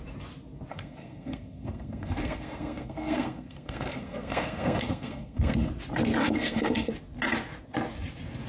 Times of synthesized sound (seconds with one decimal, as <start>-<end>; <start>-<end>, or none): 0.7-5.7; 6.2-6.9